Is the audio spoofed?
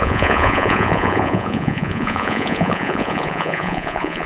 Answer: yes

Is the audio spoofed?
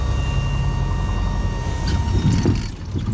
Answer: no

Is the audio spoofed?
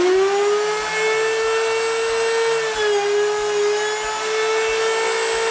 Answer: no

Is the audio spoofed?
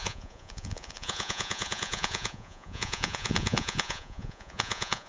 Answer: yes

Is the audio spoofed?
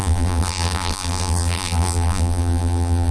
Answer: yes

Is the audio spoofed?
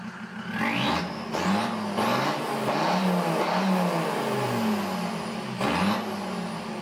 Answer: no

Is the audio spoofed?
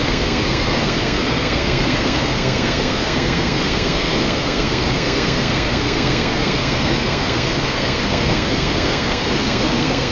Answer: yes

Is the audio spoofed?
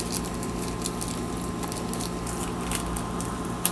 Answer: no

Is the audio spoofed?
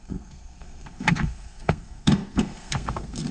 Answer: yes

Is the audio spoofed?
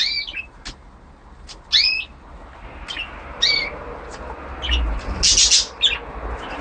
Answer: no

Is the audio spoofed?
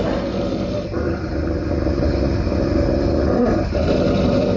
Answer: no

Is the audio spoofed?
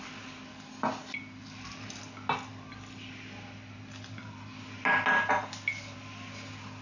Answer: no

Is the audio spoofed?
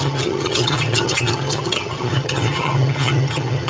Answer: yes